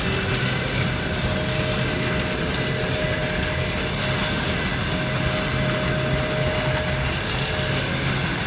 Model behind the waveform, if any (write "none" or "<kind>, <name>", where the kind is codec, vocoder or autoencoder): none